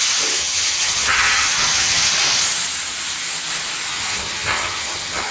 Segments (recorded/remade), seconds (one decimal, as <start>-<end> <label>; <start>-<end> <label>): 0.0-0.4 recorded; 0.4-2.1 remade; 2.1-3.9 recorded; 3.9-5.3 remade